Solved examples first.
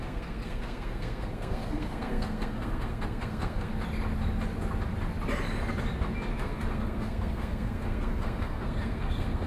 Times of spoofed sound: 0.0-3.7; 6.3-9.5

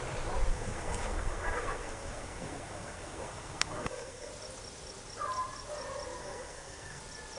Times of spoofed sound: 0.5-4.3; 6.2-7.0

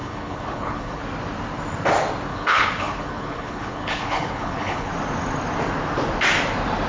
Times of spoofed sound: 0.0-1.0; 2.3-4.9

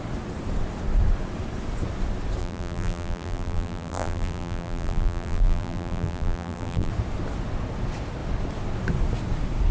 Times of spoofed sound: 2.4-6.9

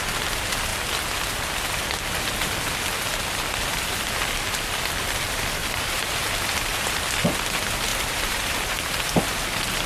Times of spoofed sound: 5.6-7.0; 7.9-9.2

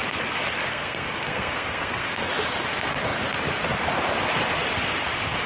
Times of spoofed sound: 0.7-2.3

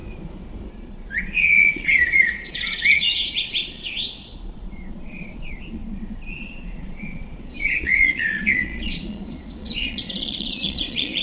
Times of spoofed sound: 0.7-5.8; 6.3-11.2